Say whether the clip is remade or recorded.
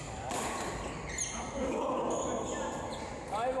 recorded